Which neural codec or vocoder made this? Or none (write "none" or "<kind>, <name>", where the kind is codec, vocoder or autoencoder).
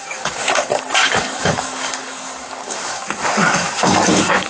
codec, DAC